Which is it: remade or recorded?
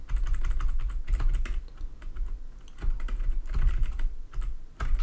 recorded